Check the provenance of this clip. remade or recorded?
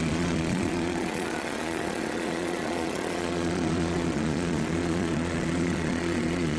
remade